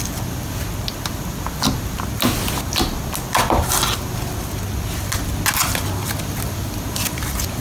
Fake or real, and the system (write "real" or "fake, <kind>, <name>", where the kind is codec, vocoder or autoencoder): real